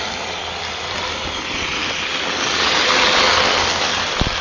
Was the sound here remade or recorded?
recorded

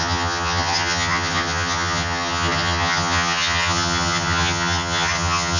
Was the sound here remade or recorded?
remade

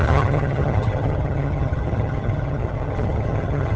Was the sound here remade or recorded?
remade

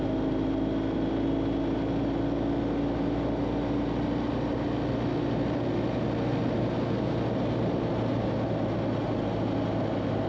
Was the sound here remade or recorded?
recorded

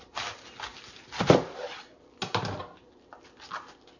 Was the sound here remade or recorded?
recorded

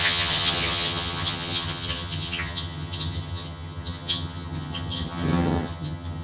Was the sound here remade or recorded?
remade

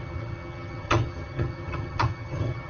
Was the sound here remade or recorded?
remade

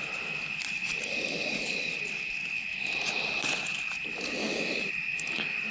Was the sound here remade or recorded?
recorded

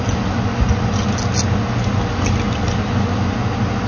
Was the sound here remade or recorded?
recorded